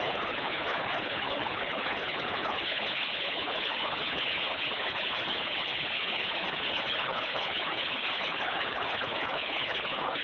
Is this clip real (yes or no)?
no